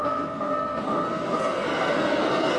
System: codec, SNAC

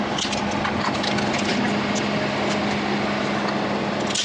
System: none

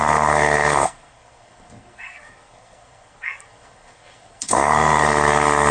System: codec, SNAC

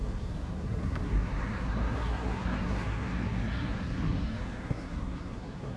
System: codec, SNAC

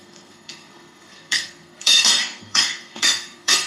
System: codec, SNAC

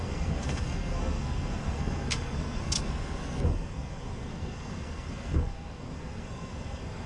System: codec, SNAC